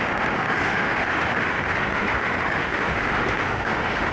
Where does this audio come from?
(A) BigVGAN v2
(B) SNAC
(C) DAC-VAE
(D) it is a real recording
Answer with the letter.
C